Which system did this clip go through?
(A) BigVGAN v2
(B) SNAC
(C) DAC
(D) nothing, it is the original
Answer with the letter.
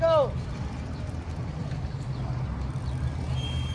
A